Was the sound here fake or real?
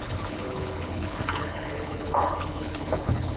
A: fake